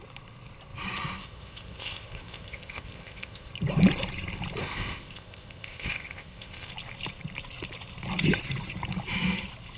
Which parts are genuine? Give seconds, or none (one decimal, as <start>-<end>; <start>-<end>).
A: 0.0-1.2; 3.5-4.6; 6.7-9.8

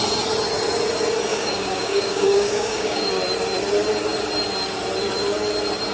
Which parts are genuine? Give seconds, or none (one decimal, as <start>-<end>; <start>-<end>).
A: 0.0-1.3; 3.1-5.9

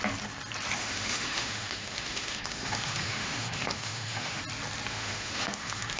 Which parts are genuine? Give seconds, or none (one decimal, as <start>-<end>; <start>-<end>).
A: 0.0-0.8; 4.4-4.9